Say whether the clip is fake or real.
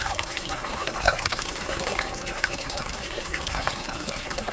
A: fake